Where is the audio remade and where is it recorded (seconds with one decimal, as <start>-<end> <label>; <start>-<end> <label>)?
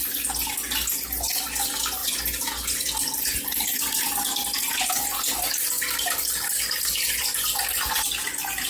0.0-8.7 recorded